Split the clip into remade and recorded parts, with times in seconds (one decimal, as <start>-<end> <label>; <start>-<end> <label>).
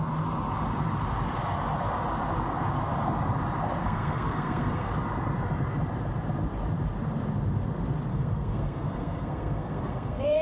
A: 0.0-3.8 recorded; 3.8-4.9 remade; 4.9-8.1 recorded; 8.1-10.4 remade